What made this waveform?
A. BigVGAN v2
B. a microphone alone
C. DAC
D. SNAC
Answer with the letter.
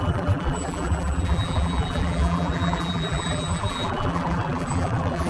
A